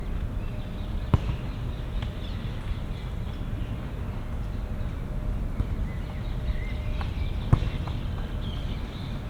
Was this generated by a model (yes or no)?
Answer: no